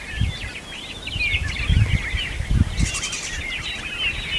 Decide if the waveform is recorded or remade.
recorded